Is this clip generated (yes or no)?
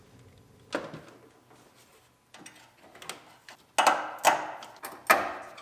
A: no